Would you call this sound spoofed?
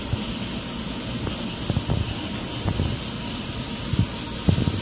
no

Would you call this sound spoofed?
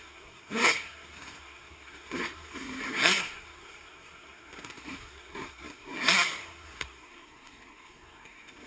yes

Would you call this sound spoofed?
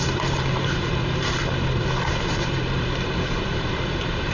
yes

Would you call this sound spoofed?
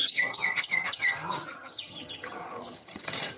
yes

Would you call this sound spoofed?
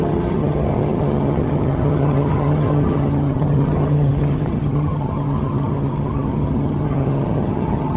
yes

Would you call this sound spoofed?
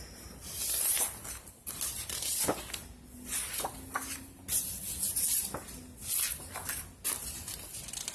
no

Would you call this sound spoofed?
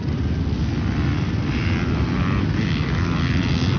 no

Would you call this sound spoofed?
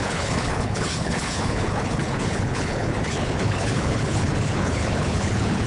yes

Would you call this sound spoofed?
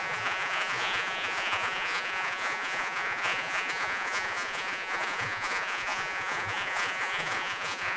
yes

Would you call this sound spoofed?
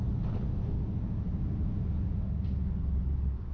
no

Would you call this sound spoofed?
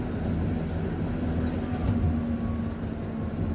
no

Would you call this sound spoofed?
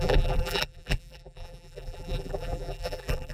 yes